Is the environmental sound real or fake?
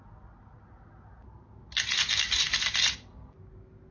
real